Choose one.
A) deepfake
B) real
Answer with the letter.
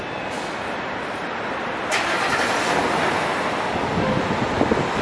B